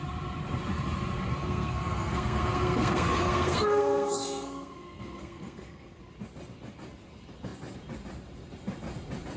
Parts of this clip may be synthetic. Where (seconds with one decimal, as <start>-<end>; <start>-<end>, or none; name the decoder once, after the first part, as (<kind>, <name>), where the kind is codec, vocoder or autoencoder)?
1.3-6.0 (codec, SNAC)

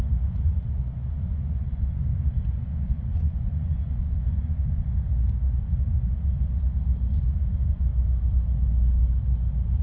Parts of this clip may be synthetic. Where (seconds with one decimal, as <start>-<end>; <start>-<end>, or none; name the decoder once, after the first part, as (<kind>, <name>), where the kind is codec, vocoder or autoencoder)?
0.0-5.1 (vocoder, Vocos); 5.7-6.3; 7.1-7.9

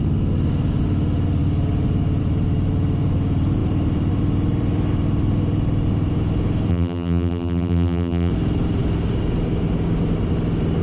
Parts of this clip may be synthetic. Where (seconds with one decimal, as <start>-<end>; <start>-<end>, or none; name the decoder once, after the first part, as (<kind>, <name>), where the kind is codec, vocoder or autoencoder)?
6.7-8.3 (vocoder, BigVGAN v2)

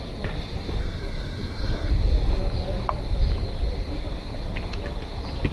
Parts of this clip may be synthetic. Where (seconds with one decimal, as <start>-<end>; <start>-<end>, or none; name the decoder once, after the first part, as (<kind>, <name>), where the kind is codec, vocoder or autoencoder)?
0.8-1.9 (codec, SNAC)

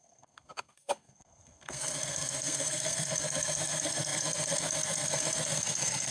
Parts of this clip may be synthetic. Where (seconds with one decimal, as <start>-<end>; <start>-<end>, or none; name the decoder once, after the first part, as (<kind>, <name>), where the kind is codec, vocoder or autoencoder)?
0.0-6.1 (codec, SNAC)

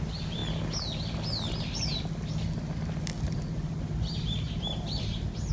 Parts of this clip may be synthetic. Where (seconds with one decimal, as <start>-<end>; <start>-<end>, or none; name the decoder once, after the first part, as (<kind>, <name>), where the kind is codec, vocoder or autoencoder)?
0.0-0.4 (vocoder, BigVGAN v2); 3.3-5.5